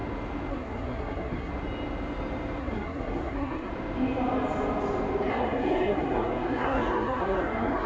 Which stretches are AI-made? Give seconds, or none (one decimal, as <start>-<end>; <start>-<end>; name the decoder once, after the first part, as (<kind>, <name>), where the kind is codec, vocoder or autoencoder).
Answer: 0.5-1.5 (codec, SNAC); 2.6-3.7; 5.3-7.9